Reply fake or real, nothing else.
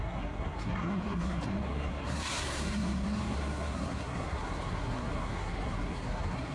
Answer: fake